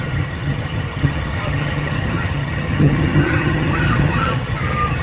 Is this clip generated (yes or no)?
yes